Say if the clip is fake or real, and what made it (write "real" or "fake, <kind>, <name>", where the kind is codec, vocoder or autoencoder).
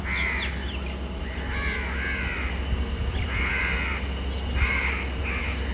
real